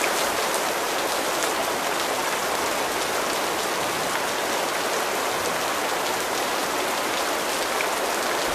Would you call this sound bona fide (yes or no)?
yes